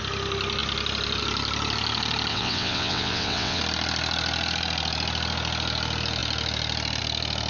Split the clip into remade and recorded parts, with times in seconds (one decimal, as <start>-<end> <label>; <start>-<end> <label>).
0.0-2.3 recorded; 2.3-3.6 remade; 3.6-7.5 recorded